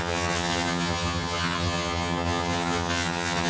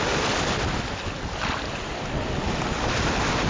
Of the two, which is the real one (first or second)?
second